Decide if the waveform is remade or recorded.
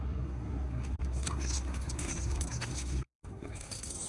remade